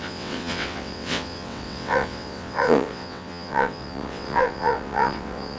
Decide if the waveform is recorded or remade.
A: remade